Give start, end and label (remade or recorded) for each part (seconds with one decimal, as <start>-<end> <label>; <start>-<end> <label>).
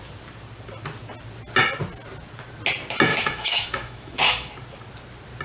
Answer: 0.0-3.1 recorded; 3.1-4.5 remade; 4.5-5.4 recorded